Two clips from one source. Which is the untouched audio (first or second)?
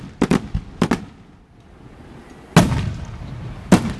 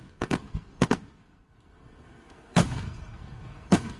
first